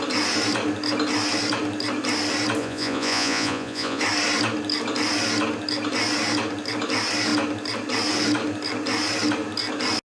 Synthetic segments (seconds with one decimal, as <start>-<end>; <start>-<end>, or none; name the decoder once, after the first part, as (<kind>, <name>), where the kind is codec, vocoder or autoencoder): 2.6-4.0 (vocoder, Vocos)